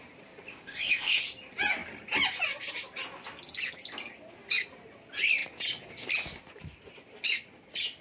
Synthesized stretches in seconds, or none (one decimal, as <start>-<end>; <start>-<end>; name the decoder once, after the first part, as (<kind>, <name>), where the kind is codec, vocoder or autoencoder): 0.5-1.2 (codec, ZipCodec)